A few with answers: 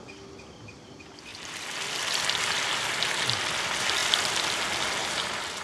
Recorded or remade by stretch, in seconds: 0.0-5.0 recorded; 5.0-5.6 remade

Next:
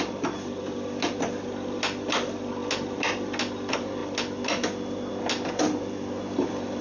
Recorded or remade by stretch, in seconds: 0.0-6.8 recorded

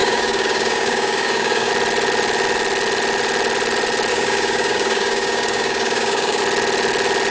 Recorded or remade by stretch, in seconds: 0.0-1.7 remade; 1.7-4.1 recorded; 4.1-6.4 remade; 6.4-7.3 recorded

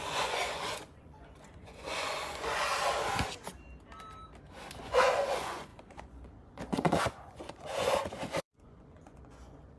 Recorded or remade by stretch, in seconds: 0.0-2.7 remade; 2.7-4.8 recorded; 4.8-9.8 remade

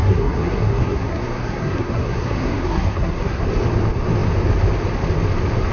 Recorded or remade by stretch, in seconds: 0.0-3.4 remade; 3.4-5.7 recorded

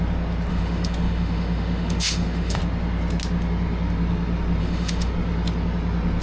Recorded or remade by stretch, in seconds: 0.0-0.5 recorded; 0.5-2.6 remade; 2.6-4.6 recorded; 4.6-5.1 remade; 5.1-6.2 recorded

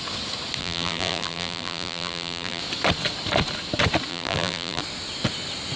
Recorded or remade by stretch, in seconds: 0.0-0.6 recorded; 0.6-2.6 remade; 2.6-4.1 recorded; 4.1-4.8 remade; 4.8-5.8 recorded

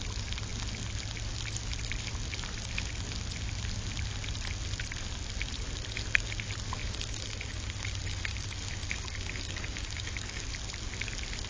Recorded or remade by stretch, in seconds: 0.0-6.8 recorded; 6.8-10.4 remade; 10.4-11.5 recorded